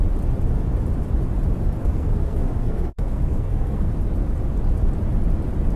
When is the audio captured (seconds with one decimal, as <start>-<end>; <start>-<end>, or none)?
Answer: 0.0-1.8; 3.9-5.8